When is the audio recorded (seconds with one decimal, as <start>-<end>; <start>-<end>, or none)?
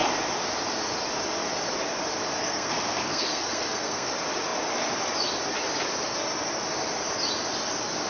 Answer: 0.0-2.4; 4.1-8.1